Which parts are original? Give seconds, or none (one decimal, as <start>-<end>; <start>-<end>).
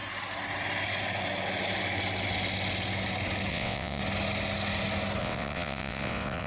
0.0-3.5; 4.0-5.2